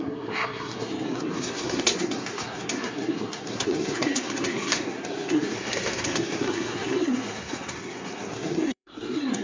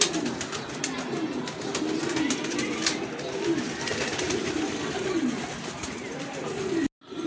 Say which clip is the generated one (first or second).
first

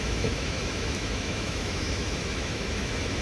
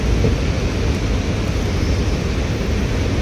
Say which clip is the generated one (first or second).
first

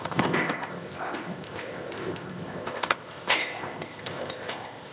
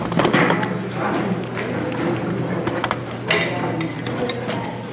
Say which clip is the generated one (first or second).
first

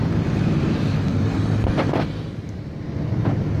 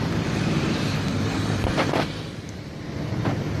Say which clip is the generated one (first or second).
second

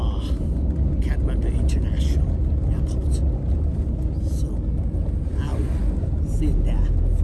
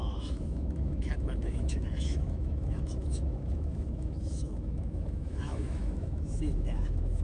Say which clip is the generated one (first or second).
second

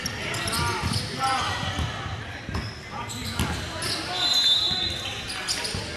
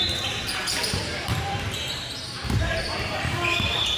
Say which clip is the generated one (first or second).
second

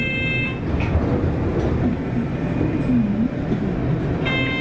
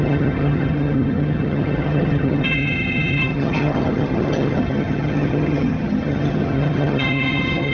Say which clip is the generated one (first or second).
second